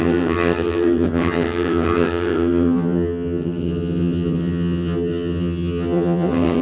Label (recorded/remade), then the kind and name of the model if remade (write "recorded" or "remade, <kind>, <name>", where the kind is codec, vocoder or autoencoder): remade, vocoder, HiFi-GAN